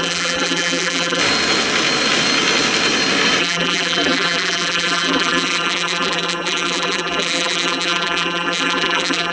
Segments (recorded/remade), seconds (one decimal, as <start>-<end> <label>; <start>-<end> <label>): 0.0-1.2 remade; 1.2-3.4 recorded; 3.4-9.3 remade